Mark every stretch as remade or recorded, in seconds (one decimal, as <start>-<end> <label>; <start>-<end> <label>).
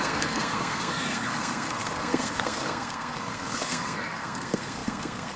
0.0-5.4 remade